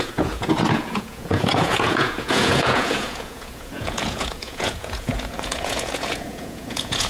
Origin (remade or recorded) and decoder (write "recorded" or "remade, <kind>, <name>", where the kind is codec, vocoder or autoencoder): remade, vocoder, Vocos